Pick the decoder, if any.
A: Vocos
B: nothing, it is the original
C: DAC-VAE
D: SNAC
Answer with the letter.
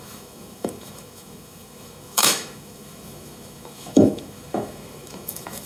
C